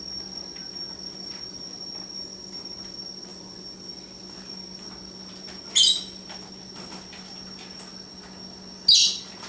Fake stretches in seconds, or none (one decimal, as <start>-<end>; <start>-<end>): none